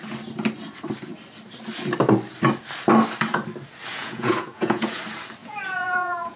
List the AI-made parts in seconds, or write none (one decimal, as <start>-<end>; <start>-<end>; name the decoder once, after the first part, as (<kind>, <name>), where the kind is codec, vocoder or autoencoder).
3.9-5.0 (vocoder, Vocos); 5.4-6.4

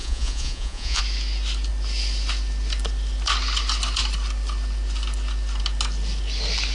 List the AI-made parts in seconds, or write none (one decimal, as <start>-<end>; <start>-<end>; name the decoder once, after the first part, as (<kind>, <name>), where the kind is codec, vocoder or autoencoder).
0.0-1.0 (vocoder, Vocos)

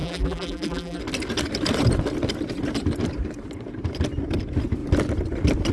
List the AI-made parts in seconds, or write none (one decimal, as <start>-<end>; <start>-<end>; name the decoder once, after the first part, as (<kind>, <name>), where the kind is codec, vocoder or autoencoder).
0.0-1.0 (vocoder, BigVGAN v2)

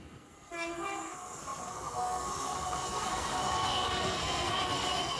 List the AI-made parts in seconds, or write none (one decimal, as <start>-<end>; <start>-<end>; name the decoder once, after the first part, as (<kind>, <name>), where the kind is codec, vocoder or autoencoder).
0.0-5.2 (codec, SNAC)